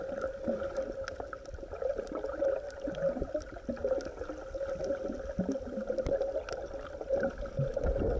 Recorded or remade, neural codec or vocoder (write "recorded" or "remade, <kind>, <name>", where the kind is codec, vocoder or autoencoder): recorded